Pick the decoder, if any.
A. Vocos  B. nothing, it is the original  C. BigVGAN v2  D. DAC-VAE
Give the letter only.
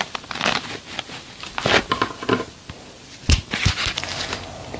B